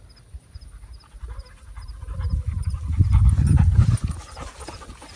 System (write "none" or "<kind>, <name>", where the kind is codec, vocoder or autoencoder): none